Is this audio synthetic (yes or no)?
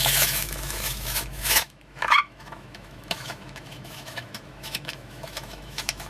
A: yes